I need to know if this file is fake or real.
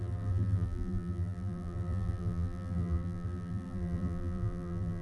fake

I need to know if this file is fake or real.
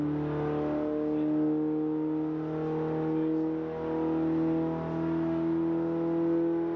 real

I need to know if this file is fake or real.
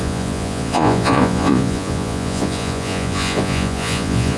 fake